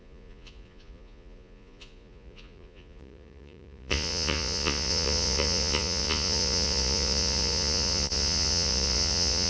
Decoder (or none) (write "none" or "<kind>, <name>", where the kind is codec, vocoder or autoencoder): vocoder, Vocos